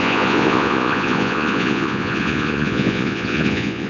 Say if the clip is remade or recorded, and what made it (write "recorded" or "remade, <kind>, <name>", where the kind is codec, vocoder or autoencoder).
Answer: remade, vocoder, Vocos